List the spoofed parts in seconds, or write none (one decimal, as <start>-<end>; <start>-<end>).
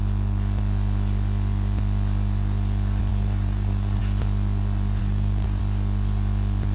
3.1-4.0; 5.0-5.6